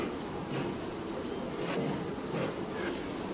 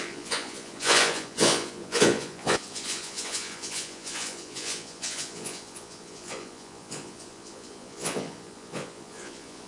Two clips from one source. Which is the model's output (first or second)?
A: second